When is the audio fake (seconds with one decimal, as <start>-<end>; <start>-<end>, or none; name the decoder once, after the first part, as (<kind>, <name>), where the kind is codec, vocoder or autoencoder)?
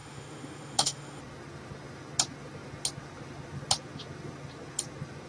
0.0-1.2 (autoencoder, DAC-VAE)